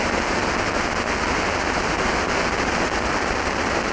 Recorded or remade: recorded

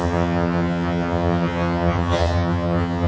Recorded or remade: remade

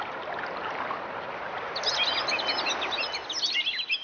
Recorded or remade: recorded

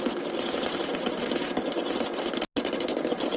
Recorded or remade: recorded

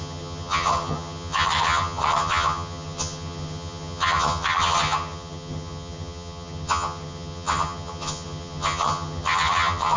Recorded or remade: remade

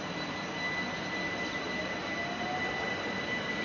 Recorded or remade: recorded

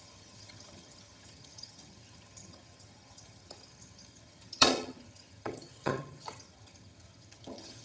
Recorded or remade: remade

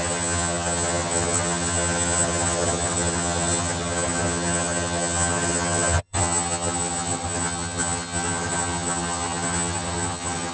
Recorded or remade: remade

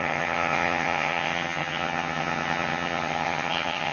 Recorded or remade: remade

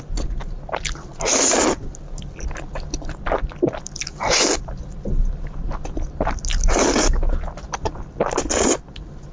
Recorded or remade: recorded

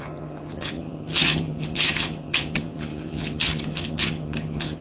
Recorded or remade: remade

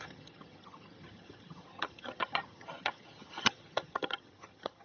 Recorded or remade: remade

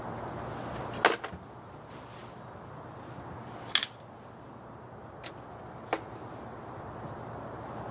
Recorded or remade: recorded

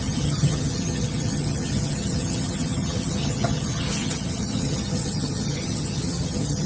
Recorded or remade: remade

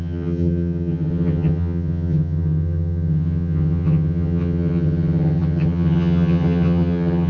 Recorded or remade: remade